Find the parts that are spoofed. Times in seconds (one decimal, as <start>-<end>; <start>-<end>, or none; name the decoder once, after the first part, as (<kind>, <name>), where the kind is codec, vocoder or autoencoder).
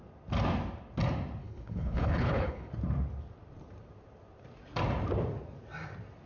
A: 1.4-2.7 (codec, HILCodec)